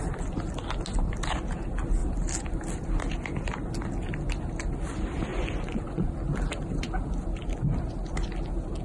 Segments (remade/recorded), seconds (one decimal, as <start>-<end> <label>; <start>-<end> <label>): 0.0-5.3 recorded; 5.3-6.1 remade; 6.1-8.8 recorded